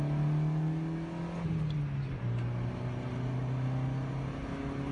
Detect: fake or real real